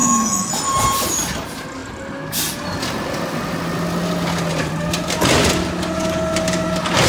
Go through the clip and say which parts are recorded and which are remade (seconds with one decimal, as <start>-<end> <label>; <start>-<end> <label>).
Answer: 0.0-0.5 remade; 0.5-7.1 recorded